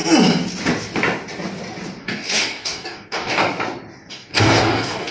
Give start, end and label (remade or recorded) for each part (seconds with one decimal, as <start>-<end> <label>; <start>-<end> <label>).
0.0-2.0 recorded; 2.0-3.4 remade; 3.4-4.1 recorded; 4.1-5.1 remade